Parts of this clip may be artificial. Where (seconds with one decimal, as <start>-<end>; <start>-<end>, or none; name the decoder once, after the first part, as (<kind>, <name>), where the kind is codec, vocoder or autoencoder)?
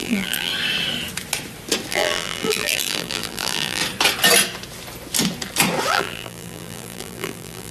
0.0-0.5 (vocoder, BigVGAN v2); 1.9-3.8; 5.9-7.7